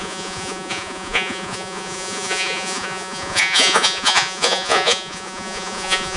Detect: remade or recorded remade